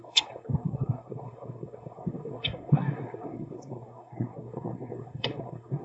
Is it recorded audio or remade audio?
remade